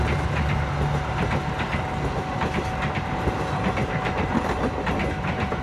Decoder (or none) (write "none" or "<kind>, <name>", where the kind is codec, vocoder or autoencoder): none